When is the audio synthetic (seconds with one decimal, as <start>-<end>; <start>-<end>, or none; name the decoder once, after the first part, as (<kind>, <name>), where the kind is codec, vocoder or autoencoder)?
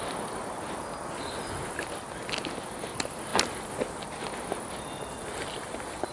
none